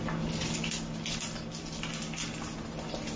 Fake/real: real